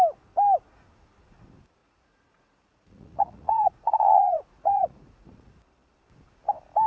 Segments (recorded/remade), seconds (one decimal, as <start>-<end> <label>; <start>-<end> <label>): 0.0-1.8 recorded; 1.8-5.5 remade; 5.5-6.9 recorded